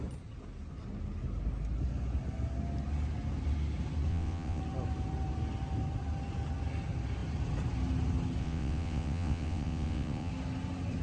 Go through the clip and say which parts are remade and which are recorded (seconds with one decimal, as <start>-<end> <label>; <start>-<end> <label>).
0.0-4.1 recorded; 4.1-4.6 remade; 4.6-8.4 recorded; 8.4-10.3 remade; 10.3-11.0 recorded

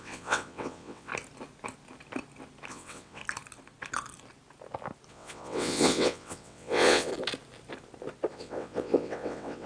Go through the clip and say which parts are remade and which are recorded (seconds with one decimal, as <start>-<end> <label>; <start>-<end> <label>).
0.0-1.1 remade; 1.1-2.7 recorded; 2.7-3.2 remade; 3.2-5.1 recorded; 5.1-7.1 remade; 7.1-8.3 recorded; 8.3-9.7 remade

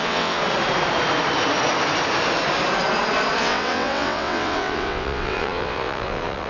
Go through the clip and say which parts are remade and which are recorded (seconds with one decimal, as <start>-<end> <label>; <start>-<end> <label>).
0.0-0.4 remade; 0.4-3.4 recorded; 3.4-6.5 remade

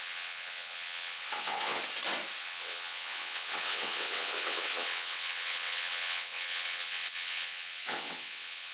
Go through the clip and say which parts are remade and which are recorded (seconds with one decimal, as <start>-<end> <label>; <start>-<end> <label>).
0.0-1.8 remade; 1.8-2.4 recorded; 2.4-8.7 remade